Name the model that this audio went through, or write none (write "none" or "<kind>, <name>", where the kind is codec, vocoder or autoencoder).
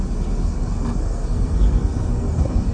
codec, SNAC